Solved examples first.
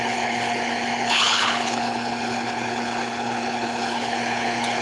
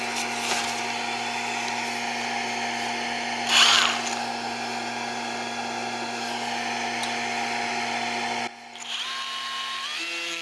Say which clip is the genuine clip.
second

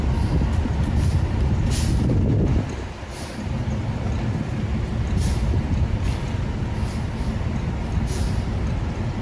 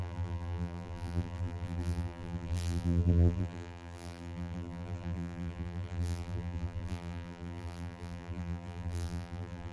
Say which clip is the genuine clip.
first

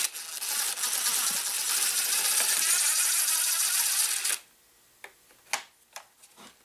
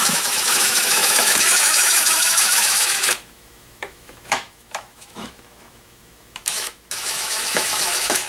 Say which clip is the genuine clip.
first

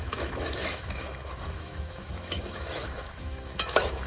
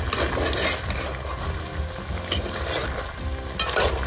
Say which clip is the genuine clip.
second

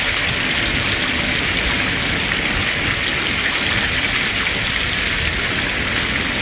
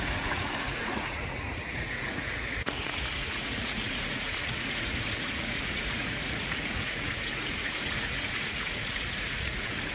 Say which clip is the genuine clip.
first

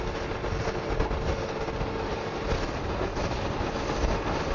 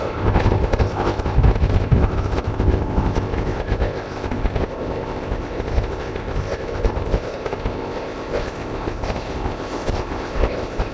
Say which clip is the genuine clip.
first